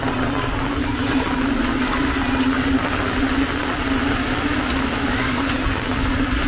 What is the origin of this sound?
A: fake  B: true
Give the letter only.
B